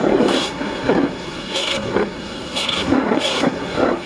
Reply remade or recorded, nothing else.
remade